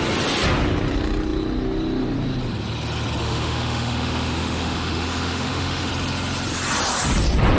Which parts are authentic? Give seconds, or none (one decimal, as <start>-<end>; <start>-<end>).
0.0-3.2; 5.9-7.6